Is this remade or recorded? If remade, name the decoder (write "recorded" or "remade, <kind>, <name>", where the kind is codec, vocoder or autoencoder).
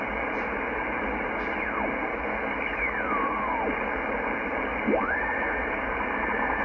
recorded